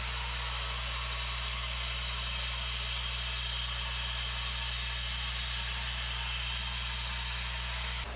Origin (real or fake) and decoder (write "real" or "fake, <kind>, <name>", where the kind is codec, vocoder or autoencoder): real